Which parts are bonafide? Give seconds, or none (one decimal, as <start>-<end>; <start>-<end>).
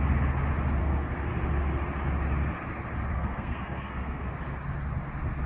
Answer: 0.0-0.8; 1.3-3.1; 4.3-5.5